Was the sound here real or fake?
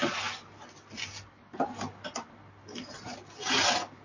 real